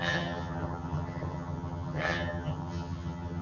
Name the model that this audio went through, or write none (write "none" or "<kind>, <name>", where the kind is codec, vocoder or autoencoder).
vocoder, HiFi-GAN